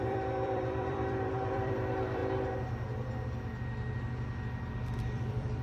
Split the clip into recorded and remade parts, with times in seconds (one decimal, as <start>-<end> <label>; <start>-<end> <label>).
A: 0.0-2.2 remade; 2.2-4.7 recorded; 4.7-5.6 remade